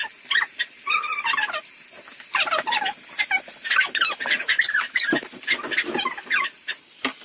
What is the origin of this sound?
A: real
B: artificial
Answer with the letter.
A